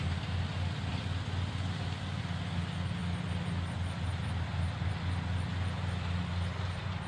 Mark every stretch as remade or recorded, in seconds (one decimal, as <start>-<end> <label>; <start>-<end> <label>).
0.0-7.1 recorded